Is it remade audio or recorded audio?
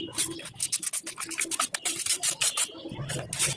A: remade